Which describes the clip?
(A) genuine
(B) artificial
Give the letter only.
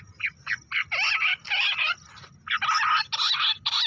A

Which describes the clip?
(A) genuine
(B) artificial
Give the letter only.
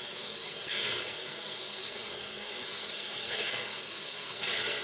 B